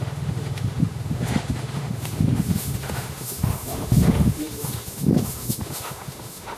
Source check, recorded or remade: remade